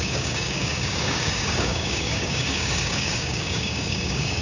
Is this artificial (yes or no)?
yes